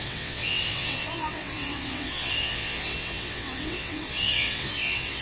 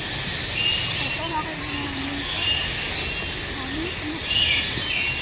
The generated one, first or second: first